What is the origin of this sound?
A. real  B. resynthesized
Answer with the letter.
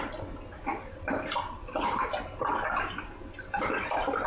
A